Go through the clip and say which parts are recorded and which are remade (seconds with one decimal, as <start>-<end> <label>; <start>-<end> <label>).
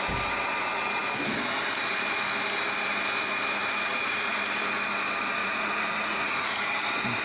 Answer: 0.0-5.4 recorded; 5.4-6.6 remade; 6.6-7.2 recorded